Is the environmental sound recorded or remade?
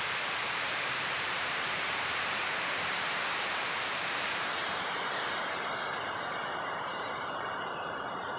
remade